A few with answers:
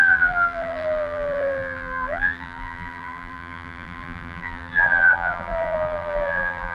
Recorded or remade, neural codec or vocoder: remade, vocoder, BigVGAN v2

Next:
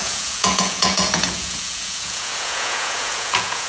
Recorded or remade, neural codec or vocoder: remade, vocoder, Vocos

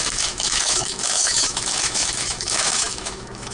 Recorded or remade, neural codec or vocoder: remade, autoencoder, DAC-VAE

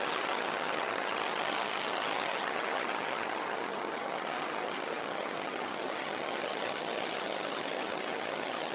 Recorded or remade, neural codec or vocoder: remade, vocoder, HiFi-GAN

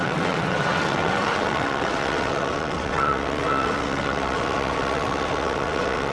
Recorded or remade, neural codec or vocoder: remade, vocoder, WaveNeXt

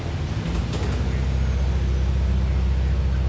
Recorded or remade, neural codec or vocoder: recorded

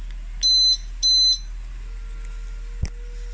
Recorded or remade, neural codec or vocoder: recorded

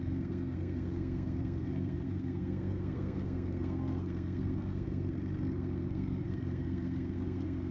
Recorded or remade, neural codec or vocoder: remade, codec, SNAC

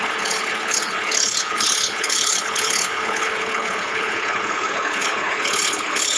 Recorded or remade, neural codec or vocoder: remade, codec, HILCodec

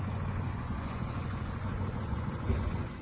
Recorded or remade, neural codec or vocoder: remade, vocoder, Vocos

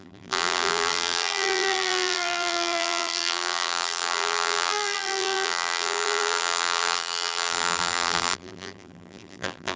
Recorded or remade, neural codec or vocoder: remade, vocoder, BigVGAN v2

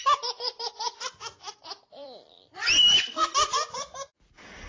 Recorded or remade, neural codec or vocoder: remade, vocoder, BigVGAN v2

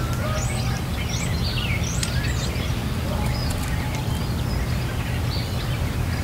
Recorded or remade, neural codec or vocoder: recorded